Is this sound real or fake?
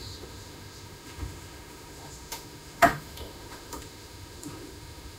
fake